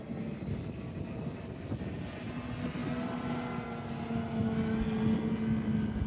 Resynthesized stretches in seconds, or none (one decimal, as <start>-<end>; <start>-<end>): none